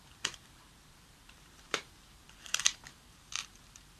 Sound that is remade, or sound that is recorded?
remade